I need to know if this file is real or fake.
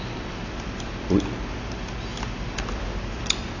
real